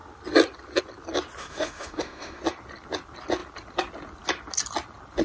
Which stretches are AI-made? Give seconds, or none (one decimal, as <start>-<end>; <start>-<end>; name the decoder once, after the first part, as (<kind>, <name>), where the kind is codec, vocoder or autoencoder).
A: 1.4-2.4 (autoencoder, DAC-VAE)